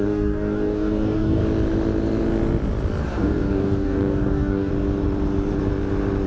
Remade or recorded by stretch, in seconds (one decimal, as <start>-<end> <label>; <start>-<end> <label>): 0.0-1.4 remade; 1.4-3.0 recorded; 3.0-4.7 remade; 4.7-6.3 recorded